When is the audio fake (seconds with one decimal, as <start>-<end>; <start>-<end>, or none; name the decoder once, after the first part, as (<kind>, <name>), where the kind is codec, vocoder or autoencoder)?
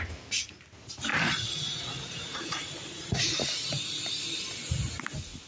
1.1-3.7 (vocoder, Vocos)